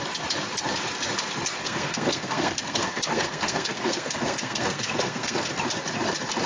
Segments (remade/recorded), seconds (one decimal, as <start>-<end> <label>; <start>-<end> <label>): 0.0-1.6 recorded; 1.6-5.5 remade; 5.5-6.5 recorded